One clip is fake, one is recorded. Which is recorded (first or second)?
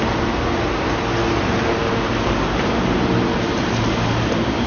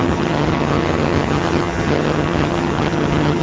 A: first